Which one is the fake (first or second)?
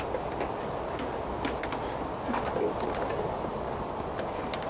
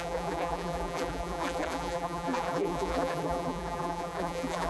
second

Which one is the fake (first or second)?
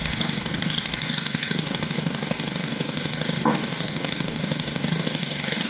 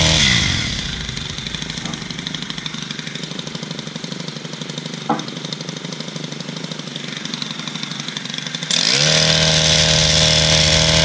first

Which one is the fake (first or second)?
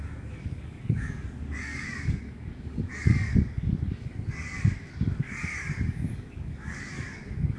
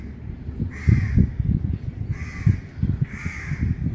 first